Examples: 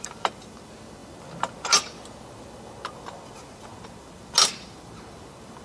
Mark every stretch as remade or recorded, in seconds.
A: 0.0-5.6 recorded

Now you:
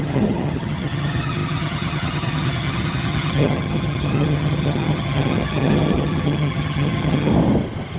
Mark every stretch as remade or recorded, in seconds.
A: 0.0-7.3 remade; 7.3-8.0 recorded